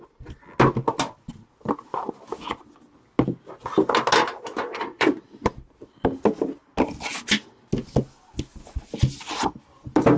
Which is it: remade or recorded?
recorded